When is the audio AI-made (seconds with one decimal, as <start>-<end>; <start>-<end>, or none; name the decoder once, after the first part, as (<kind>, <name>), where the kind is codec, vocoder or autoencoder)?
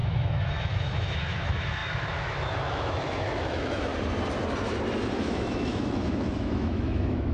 0.0-3.9 (autoencoder, DAC-VAE); 5.2-7.3